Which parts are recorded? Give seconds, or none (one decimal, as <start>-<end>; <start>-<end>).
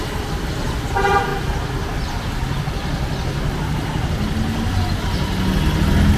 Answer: 0.0-6.2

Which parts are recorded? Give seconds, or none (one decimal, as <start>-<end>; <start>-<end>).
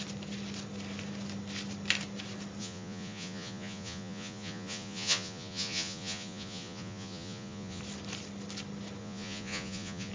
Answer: 0.0-2.6; 7.8-9.0